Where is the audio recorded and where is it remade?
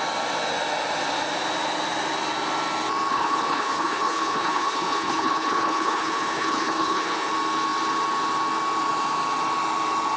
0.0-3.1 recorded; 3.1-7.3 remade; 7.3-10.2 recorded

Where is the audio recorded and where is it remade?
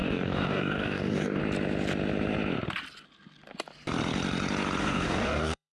0.0-1.4 remade; 1.4-4.8 recorded; 4.8-5.7 remade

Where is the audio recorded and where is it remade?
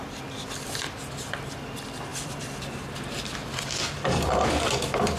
0.0-2.1 recorded; 2.1-5.2 remade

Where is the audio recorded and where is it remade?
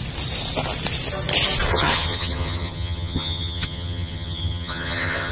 0.0-1.7 recorded; 1.7-5.3 remade